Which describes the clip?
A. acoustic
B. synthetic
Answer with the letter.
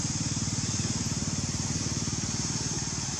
A